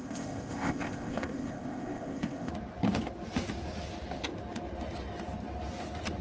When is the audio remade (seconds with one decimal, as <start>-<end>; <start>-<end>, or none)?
0.0-2.5